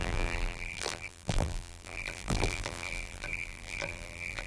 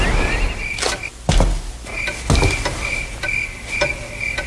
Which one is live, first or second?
second